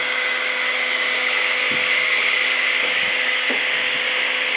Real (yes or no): no